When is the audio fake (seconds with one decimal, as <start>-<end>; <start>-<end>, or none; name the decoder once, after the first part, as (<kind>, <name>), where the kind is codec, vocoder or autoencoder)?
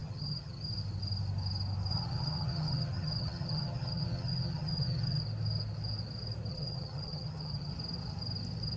0.0-0.7 (vocoder, HiFi-GAN); 1.9-5.2; 6.5-7.7